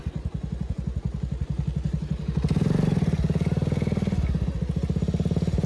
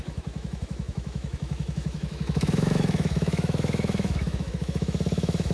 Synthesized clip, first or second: second